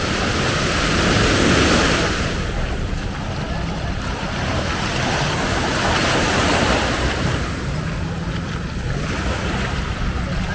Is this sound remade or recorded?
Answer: recorded